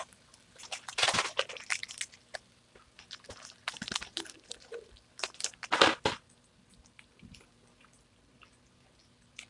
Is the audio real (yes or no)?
yes